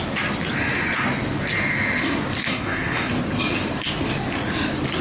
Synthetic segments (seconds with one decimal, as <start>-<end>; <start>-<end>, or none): 2.5-3.1